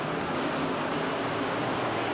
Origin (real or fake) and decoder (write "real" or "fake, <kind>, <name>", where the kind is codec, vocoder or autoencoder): fake, codec, DAC